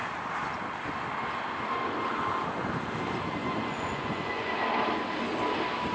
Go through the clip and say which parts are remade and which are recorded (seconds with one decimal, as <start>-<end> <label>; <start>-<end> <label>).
0.0-3.4 recorded; 3.4-4.5 remade; 4.5-5.9 recorded